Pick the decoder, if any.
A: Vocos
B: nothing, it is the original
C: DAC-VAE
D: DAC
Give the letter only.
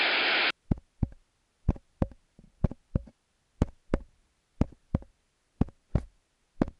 B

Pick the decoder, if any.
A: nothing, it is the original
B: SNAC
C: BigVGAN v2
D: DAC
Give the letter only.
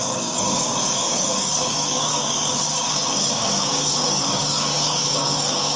D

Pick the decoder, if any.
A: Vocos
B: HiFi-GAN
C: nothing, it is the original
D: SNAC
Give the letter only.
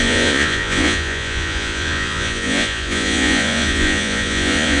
A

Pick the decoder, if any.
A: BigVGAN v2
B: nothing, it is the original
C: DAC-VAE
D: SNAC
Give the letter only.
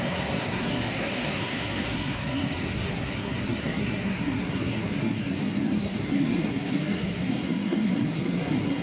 D